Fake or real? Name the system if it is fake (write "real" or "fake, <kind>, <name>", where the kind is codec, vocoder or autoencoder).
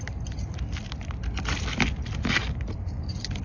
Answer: fake, vocoder, BigVGAN v2